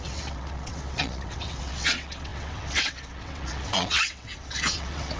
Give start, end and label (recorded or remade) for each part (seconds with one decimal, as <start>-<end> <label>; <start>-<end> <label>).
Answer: 0.0-5.2 remade